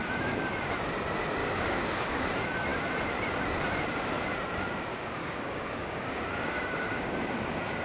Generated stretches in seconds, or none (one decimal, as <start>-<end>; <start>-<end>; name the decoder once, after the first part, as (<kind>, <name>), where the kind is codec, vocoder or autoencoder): 1.4-2.3 (codec, DAC); 4.9-7.1

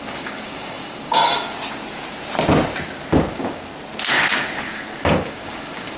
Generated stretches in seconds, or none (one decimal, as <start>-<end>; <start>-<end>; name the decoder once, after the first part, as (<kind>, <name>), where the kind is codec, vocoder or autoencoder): 0.0-1.2 (codec, DAC); 3.3-3.7; 4.6-6.0